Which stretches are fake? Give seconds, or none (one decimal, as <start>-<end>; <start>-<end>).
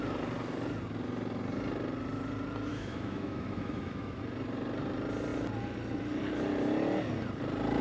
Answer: 2.7-4.2